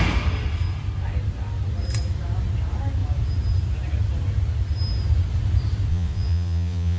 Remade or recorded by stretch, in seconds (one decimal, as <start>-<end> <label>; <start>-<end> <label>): 0.0-5.9 recorded; 5.9-7.0 remade